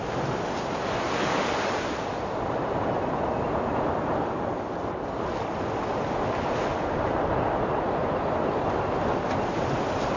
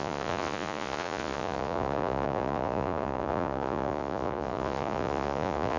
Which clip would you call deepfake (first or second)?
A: second